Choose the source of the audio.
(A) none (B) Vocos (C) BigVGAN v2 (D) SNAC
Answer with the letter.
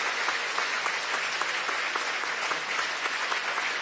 B